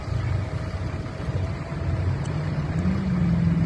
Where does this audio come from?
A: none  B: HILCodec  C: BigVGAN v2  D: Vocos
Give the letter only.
A